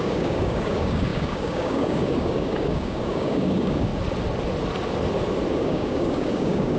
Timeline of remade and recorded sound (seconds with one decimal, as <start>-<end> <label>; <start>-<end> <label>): 0.0-3.9 remade; 3.9-5.5 recorded; 5.5-6.8 remade